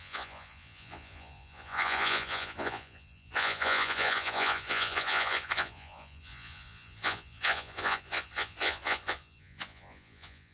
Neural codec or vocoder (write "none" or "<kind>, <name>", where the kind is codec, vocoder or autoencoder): vocoder, Vocos